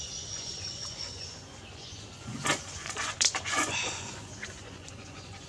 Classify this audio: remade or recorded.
remade